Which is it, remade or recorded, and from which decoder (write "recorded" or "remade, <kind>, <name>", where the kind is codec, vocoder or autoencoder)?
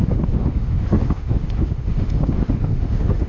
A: remade, autoencoder, DAC-VAE